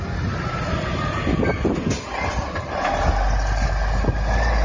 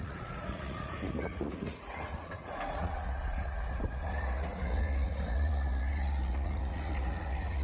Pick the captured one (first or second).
first